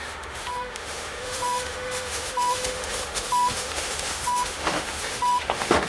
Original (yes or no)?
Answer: no